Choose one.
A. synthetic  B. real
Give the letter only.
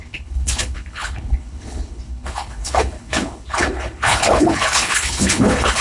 A